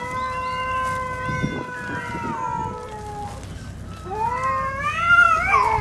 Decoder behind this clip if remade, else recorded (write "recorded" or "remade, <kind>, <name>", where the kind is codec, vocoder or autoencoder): recorded